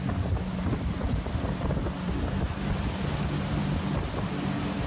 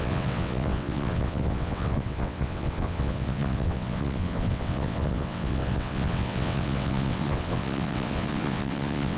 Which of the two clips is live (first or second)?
first